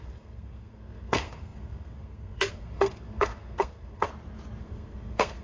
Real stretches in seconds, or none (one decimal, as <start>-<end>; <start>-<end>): 4.1-4.6